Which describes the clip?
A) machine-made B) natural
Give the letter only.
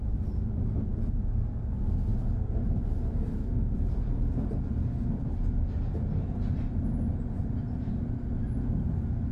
B